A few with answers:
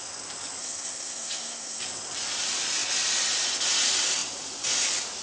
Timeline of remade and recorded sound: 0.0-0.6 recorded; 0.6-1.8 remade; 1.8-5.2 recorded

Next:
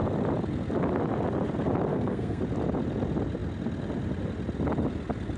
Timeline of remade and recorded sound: 0.0-1.9 recorded; 1.9-2.4 remade; 2.4-5.4 recorded

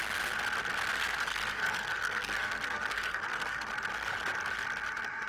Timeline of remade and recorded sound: 0.0-1.0 recorded; 1.0-3.7 remade; 3.7-5.3 recorded